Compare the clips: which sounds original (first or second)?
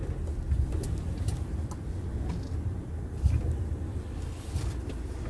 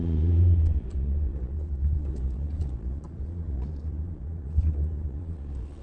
first